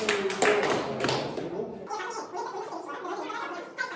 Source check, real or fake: real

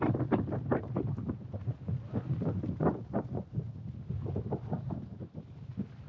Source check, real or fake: real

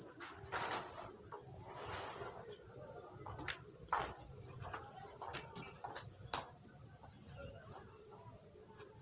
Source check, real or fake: real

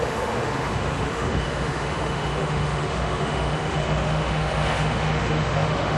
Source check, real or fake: fake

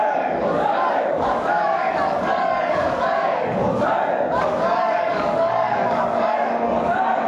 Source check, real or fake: fake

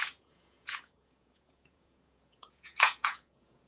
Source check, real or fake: fake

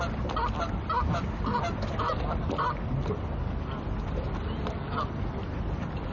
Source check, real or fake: real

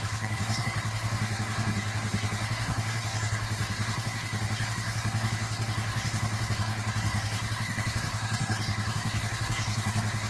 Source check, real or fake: fake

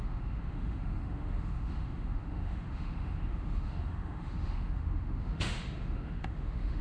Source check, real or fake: fake